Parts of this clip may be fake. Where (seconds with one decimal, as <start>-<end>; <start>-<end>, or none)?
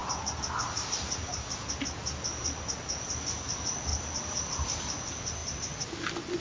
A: none